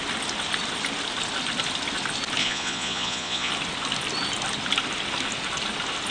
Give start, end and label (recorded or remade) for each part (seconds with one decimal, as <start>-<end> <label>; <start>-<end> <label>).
0.0-2.4 recorded; 2.4-3.5 remade; 3.5-6.1 recorded